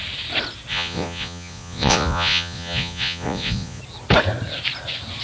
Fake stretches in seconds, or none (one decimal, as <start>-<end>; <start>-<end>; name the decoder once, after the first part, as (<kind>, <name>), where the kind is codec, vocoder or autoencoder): 0.7-3.8 (vocoder, Vocos)